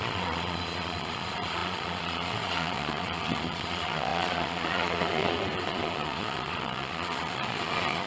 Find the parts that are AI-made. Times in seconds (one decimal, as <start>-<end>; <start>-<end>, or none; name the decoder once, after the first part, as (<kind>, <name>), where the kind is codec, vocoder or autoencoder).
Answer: 0.0-8.1 (vocoder, Vocos)